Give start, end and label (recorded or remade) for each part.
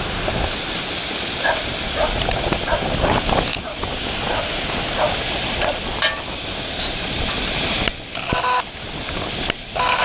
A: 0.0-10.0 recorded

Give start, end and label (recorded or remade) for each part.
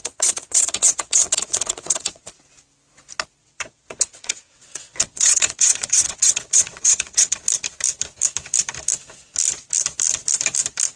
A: 0.0-2.4 remade; 2.4-3.4 recorded; 3.4-7.4 remade; 7.4-11.0 recorded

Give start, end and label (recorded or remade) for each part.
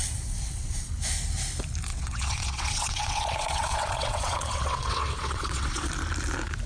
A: 0.0-0.9 remade; 0.9-1.9 recorded; 1.9-5.9 remade; 5.9-6.7 recorded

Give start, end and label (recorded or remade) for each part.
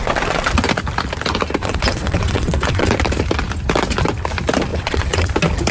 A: 0.0-1.6 recorded; 1.6-2.9 remade; 2.9-4.7 recorded; 4.7-5.3 remade; 5.3-5.7 recorded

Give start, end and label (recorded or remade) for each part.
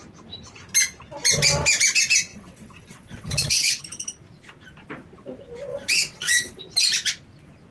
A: 0.0-2.3 recorded; 2.3-3.8 remade; 3.8-5.7 recorded; 5.7-6.6 remade; 6.6-7.7 recorded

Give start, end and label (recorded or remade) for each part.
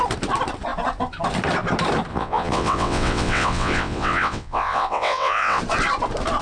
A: 0.0-2.1 recorded; 2.1-5.6 remade; 5.6-6.4 recorded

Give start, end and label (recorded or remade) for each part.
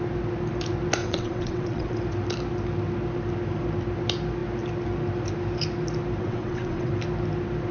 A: 0.0-1.0 recorded; 1.0-2.0 remade; 2.0-6.2 recorded; 6.2-6.9 remade; 6.9-7.7 recorded